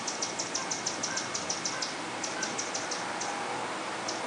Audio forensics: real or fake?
real